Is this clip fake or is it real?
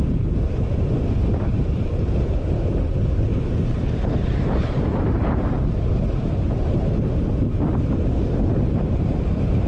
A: fake